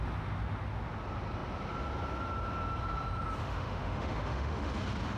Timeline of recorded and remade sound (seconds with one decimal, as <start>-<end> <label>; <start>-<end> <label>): 0.0-3.4 recorded; 3.4-4.7 remade; 4.7-5.2 recorded